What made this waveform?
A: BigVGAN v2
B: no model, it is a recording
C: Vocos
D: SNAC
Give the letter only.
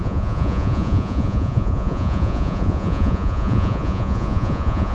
C